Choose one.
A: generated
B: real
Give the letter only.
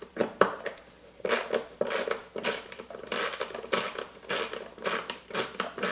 A